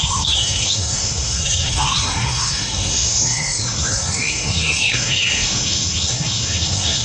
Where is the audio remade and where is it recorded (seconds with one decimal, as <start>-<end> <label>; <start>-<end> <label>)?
0.0-7.0 remade